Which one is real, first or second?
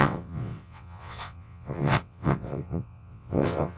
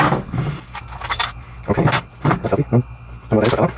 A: second